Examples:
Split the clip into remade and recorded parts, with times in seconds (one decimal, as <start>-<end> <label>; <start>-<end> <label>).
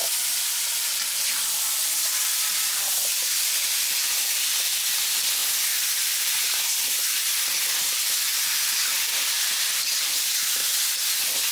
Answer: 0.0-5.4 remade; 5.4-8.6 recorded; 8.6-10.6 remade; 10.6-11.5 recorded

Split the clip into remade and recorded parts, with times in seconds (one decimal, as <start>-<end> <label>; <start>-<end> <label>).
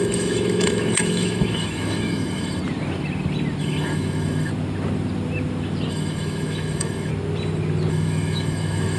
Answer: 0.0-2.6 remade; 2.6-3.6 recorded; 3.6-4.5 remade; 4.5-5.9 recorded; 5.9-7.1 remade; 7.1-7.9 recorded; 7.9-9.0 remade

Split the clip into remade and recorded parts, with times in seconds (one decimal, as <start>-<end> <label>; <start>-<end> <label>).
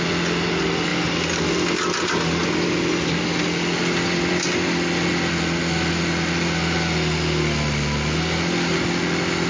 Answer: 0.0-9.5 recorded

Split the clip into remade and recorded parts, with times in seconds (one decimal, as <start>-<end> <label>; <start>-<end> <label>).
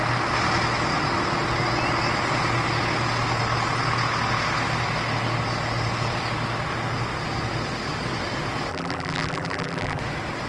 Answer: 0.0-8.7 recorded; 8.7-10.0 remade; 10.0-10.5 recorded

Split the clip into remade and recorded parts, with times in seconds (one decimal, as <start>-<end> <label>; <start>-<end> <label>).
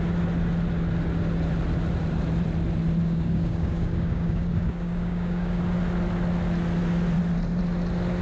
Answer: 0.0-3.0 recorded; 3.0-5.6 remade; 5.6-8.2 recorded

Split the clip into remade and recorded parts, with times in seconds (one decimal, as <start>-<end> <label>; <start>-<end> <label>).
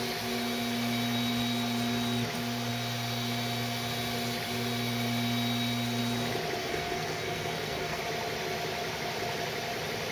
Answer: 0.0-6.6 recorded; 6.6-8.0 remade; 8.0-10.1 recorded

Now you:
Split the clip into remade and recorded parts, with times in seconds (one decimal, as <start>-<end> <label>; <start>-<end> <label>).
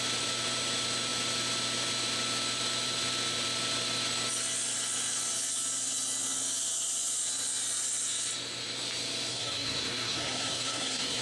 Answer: 0.0-9.3 recorded; 9.3-11.2 remade